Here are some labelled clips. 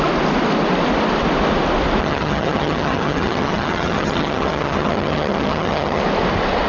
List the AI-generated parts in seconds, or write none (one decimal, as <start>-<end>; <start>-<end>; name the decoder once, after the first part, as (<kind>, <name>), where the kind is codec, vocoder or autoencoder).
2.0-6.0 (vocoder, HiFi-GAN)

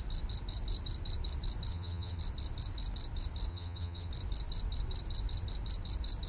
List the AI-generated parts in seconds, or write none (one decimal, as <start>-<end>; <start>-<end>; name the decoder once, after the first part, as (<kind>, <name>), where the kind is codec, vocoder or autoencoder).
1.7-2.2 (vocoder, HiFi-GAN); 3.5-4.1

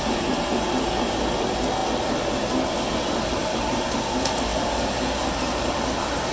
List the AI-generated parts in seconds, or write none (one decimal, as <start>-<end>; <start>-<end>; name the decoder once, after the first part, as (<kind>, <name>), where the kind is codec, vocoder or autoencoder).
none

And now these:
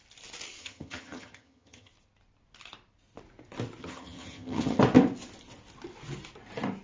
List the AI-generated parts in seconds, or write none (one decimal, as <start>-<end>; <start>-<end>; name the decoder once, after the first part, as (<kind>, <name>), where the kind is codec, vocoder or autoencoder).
0.6-1.9 (vocoder, HiFi-GAN); 3.8-4.8